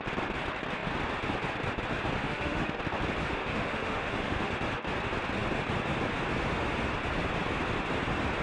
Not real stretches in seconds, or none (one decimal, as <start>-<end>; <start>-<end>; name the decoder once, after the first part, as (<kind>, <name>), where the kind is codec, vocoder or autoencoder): 2.2-2.8 (autoencoder, DAC-VAE); 3.2-4.5